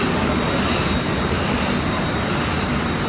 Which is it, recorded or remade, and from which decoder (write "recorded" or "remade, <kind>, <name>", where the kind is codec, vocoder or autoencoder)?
recorded